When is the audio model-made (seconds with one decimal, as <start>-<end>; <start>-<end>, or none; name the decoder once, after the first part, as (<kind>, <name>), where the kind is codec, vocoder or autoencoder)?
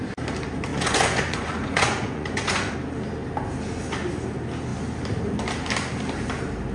0.7-2.7 (vocoder, Vocos)